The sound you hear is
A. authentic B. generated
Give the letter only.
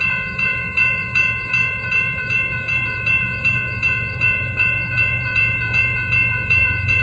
B